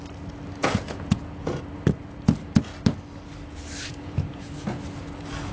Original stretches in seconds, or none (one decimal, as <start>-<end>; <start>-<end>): 0.0-0.6; 1.6-3.9; 4.5-5.5